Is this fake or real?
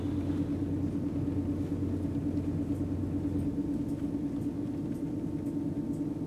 real